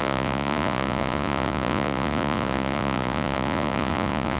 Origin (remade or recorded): remade